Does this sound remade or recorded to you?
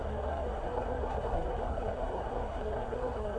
remade